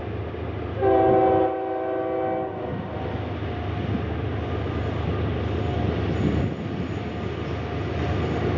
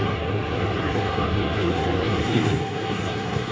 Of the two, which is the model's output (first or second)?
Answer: second